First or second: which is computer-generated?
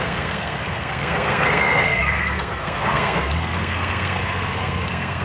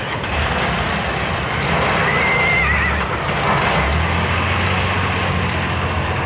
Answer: first